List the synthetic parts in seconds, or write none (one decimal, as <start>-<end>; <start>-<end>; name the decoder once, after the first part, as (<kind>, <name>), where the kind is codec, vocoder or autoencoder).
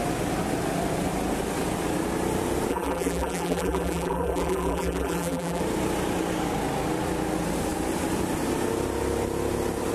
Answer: 2.7-5.6 (vocoder, BigVGAN v2)